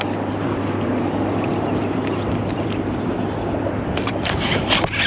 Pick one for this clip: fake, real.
fake